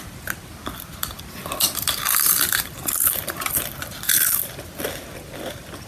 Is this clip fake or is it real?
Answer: fake